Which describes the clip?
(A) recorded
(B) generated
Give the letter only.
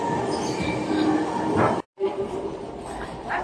A